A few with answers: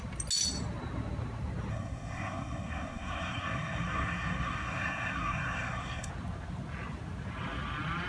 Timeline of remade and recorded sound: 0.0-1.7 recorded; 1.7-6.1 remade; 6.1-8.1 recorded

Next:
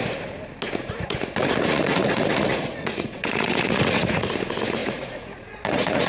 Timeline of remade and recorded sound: 0.0-0.8 recorded; 0.8-4.3 remade; 4.3-4.8 recorded; 4.8-6.1 remade

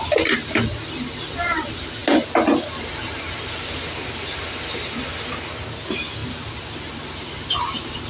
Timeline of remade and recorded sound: 0.0-8.1 recorded

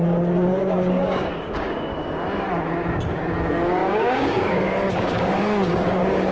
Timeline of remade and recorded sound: 0.0-1.9 remade; 1.9-2.9 recorded; 2.9-6.3 remade

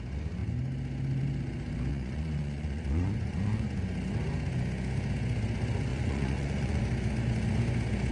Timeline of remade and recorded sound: 0.0-1.9 recorded; 1.9-3.8 remade; 3.8-5.9 recorded; 5.9-6.8 remade; 6.8-8.1 recorded